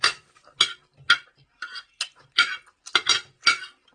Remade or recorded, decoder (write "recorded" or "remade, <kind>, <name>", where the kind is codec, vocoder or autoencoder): recorded